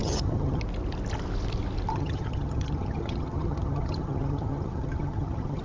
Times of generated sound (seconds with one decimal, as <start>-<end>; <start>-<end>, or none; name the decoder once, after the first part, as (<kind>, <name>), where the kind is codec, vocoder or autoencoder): 0.0-0.6 (vocoder, HiFi-GAN); 1.9-5.6